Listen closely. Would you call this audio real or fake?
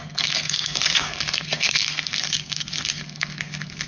fake